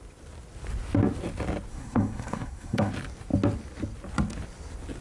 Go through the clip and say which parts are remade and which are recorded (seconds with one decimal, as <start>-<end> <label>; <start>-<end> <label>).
0.0-1.7 recorded; 1.7-2.9 remade; 2.9-5.0 recorded